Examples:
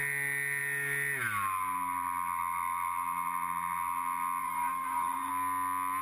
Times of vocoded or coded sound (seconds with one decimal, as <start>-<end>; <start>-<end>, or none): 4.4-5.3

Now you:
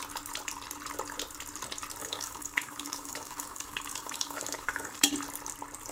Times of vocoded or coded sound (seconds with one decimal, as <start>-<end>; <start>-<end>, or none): 2.0-5.1

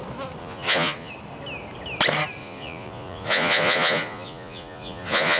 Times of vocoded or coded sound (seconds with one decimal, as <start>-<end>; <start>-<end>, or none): 0.4-1.1; 2.4-5.4

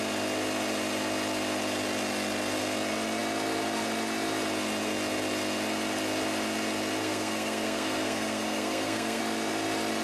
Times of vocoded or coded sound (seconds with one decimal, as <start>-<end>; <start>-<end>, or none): 7.0-9.2

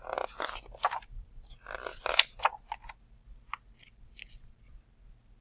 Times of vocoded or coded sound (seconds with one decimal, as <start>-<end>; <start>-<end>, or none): none

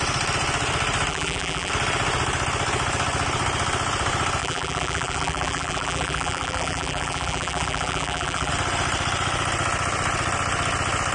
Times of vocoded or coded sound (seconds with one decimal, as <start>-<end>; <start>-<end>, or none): 1.1-1.7; 4.4-8.5